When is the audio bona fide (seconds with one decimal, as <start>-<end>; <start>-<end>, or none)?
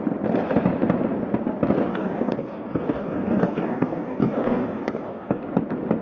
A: 0.0-1.9; 5.4-6.0